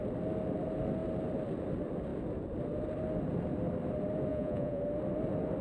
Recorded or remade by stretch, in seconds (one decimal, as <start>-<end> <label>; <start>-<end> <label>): 0.0-4.3 recorded; 4.3-4.8 remade; 4.8-5.6 recorded